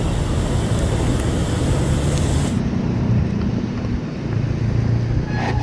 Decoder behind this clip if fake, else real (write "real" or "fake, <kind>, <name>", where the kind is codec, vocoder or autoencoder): real